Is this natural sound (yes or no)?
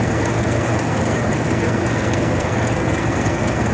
no